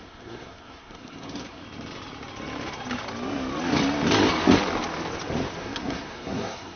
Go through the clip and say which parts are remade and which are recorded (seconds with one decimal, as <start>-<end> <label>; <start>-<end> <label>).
0.0-1.6 remade; 1.6-5.6 recorded; 5.6-6.8 remade

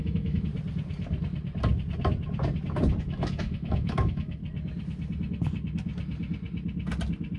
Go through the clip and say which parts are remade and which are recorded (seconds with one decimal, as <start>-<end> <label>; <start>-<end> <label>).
0.0-0.5 remade; 0.5-3.0 recorded; 3.0-4.4 remade; 4.4-7.4 recorded